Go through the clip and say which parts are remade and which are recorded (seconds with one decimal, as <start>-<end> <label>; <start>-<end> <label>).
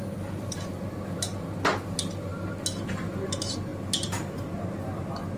0.0-5.4 recorded